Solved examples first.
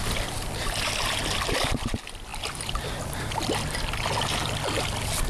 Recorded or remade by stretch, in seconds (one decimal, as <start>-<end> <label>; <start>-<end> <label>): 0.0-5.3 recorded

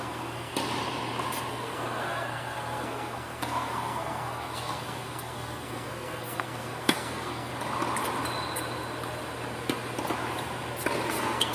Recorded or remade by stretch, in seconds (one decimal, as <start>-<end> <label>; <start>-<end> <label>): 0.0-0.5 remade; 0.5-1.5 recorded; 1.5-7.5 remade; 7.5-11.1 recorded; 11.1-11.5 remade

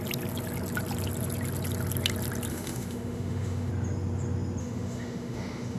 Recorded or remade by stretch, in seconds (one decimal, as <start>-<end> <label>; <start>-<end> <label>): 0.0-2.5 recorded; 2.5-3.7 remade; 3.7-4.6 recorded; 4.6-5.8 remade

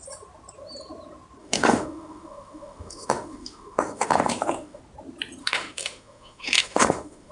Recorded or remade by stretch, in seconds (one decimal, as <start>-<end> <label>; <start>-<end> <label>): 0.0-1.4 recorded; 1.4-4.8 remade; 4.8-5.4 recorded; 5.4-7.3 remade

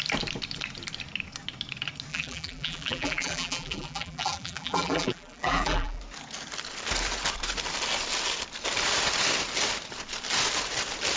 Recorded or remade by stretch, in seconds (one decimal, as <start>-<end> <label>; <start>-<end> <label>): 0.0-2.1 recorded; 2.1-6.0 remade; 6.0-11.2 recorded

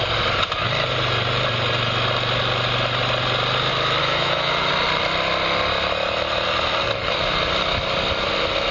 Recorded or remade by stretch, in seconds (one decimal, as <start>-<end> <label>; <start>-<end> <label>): 0.0-4.0 recorded; 4.0-4.7 remade; 4.7-8.7 recorded

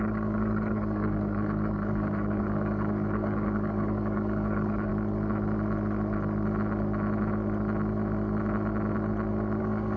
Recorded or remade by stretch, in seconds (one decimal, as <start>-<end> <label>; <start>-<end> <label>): 0.0-4.9 remade; 4.9-9.6 recorded; 9.6-10.0 remade